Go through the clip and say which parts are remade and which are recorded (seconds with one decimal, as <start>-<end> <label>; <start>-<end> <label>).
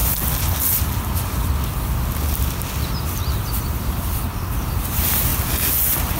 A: 0.0-3.7 recorded; 3.7-5.3 remade; 5.3-6.2 recorded